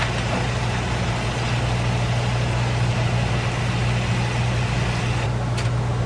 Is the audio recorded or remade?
recorded